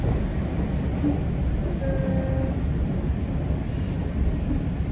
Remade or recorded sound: recorded